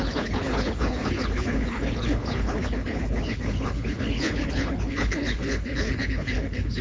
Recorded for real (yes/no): no